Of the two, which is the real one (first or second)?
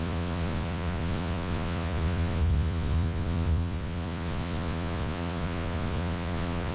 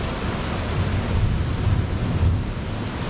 second